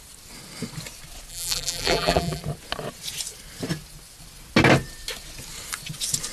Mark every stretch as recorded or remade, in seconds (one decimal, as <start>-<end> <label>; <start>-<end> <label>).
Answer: 0.0-1.3 recorded; 1.3-2.4 remade; 2.4-6.3 recorded